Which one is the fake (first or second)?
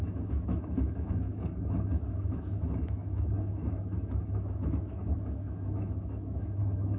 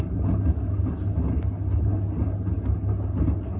first